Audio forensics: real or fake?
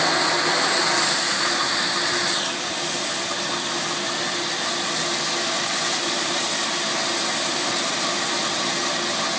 real